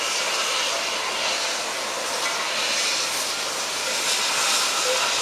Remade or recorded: recorded